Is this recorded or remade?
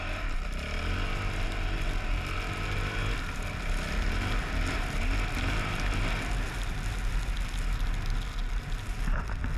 recorded